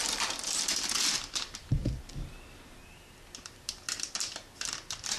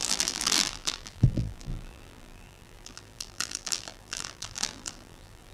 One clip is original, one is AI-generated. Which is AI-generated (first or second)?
second